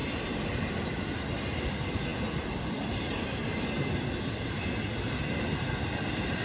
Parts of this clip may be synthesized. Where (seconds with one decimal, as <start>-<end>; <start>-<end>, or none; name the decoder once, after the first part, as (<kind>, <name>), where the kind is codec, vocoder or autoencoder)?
none